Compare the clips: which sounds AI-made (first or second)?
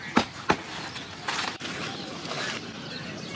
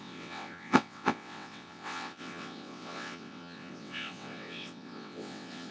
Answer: second